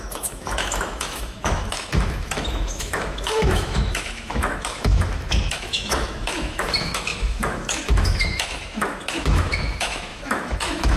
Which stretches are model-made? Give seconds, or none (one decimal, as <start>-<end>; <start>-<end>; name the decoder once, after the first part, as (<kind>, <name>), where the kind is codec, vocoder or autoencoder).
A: 0.0-11.0 (autoencoder, DAC-VAE)